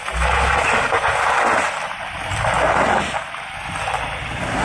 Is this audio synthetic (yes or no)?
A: no